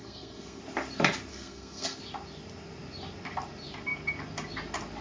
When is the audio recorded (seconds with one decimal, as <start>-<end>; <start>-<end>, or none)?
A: 0.6-1.3; 2.0-5.0